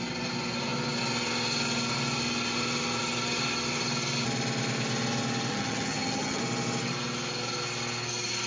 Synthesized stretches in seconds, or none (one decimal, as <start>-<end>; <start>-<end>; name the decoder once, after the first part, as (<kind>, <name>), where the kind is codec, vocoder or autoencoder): 5.5-6.4 (vocoder, HiFi-GAN)